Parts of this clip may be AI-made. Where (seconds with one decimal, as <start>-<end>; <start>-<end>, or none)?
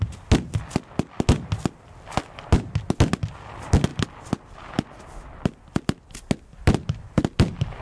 none